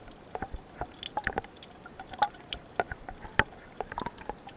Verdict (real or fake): real